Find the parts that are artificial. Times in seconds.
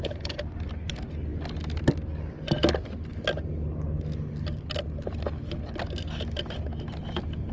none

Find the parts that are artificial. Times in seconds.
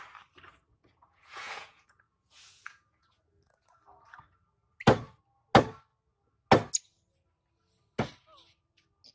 0.7-3.2